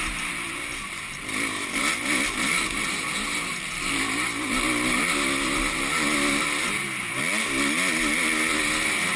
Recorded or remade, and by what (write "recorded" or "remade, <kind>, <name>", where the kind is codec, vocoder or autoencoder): recorded